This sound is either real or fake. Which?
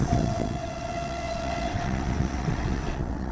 fake